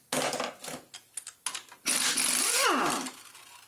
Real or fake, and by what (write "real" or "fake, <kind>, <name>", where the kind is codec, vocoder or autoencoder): real